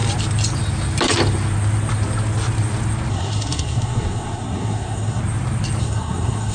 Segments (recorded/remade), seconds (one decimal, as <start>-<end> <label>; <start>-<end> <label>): 0.0-3.1 recorded; 3.1-5.2 remade; 5.2-5.8 recorded; 5.8-6.5 remade